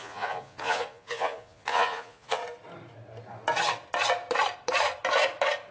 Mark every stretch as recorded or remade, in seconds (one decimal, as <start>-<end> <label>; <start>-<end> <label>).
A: 0.0-2.4 remade; 2.4-5.7 recorded